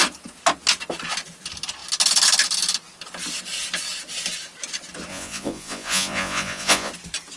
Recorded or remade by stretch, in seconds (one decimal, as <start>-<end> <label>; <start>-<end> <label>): 0.0-5.1 recorded; 5.1-6.9 remade; 6.9-7.4 recorded